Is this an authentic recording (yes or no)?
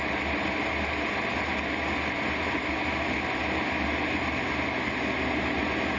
yes